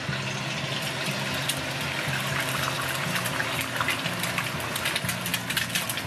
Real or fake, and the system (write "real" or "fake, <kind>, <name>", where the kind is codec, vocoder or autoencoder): real